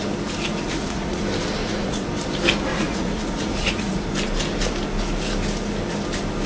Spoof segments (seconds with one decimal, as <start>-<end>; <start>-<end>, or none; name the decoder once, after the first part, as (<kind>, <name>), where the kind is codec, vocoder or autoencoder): 0.5-1.2 (vocoder, Vocos); 1.6-2.1; 2.7-4.0